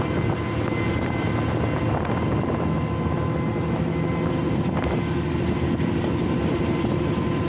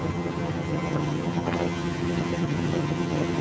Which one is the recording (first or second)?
first